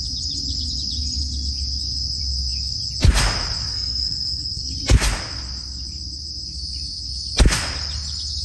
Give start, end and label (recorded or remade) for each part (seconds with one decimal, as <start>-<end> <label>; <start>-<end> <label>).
0.0-3.7 recorded; 3.7-4.7 remade; 4.7-8.4 recorded